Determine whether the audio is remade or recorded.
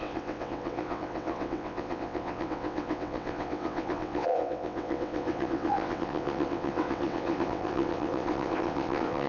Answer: remade